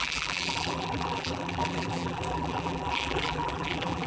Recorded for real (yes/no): no